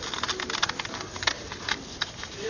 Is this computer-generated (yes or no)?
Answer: no